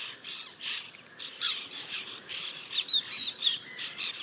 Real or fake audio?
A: fake